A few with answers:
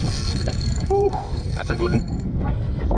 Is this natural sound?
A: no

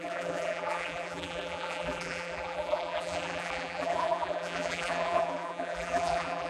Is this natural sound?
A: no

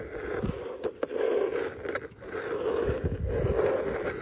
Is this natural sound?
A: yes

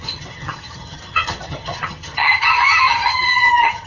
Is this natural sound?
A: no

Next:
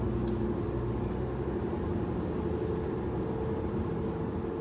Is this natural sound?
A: yes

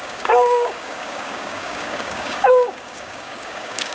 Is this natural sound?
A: no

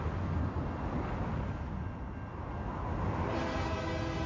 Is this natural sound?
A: yes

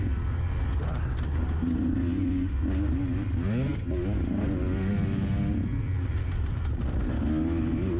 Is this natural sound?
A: yes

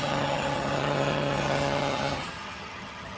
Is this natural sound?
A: no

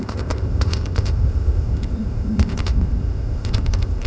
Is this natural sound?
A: no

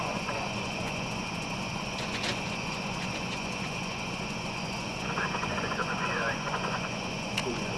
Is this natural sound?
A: no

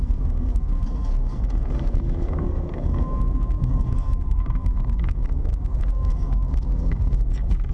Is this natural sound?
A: no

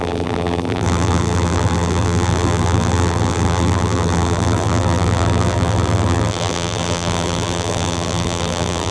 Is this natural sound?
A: no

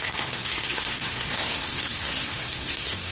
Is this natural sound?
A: no